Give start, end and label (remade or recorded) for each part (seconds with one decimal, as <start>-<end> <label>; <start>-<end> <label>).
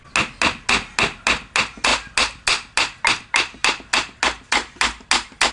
0.0-5.5 recorded